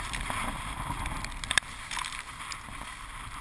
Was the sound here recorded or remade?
recorded